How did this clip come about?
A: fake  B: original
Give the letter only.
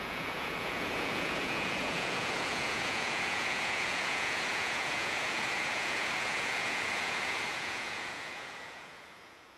A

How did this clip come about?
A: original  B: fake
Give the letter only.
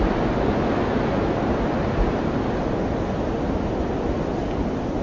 A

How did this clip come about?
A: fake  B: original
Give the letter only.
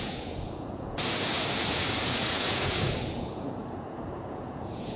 A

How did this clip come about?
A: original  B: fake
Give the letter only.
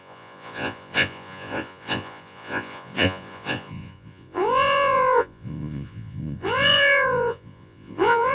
B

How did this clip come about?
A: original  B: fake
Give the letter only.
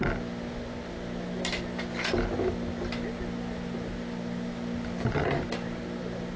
A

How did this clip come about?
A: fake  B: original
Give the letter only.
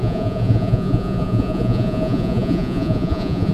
A